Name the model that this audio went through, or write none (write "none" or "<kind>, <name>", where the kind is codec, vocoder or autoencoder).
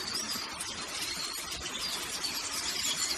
none